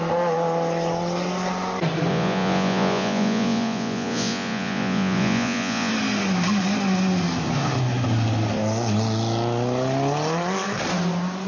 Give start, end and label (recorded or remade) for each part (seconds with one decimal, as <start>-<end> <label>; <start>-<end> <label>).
0.0-2.1 recorded; 2.1-5.9 remade; 5.9-11.5 recorded